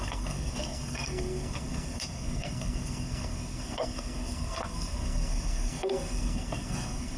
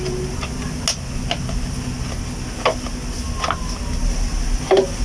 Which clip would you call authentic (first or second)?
second